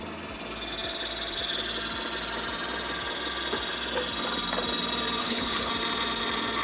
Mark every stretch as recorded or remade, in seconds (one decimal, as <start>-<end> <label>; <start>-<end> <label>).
0.0-5.2 recorded; 5.2-5.7 remade; 5.7-6.6 recorded